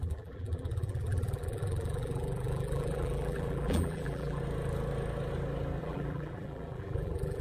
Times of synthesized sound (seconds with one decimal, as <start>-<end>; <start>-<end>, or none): 0.0-4.4; 5.8-7.4